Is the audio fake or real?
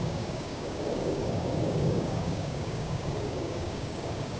fake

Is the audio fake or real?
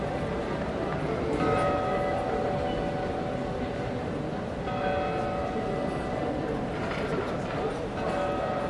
real